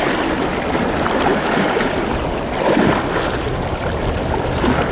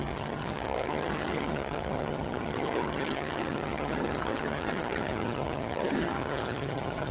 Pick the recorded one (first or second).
first